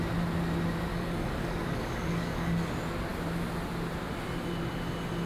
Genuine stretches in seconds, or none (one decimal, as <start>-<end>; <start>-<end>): 0.0-0.9; 2.7-5.3